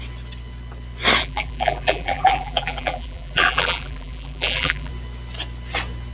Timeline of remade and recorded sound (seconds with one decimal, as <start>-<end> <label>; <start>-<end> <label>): 0.0-1.2 recorded; 1.2-4.9 remade; 4.9-6.1 recorded